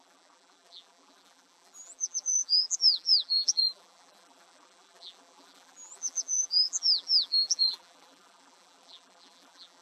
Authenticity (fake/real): fake